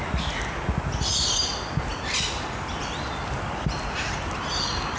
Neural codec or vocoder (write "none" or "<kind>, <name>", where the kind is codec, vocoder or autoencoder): none